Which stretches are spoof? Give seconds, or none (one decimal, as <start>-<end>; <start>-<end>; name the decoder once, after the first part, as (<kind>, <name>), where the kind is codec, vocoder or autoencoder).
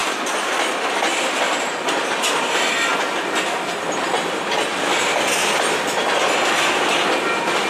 0.0-0.7 (vocoder, BigVGAN v2); 4.7-7.7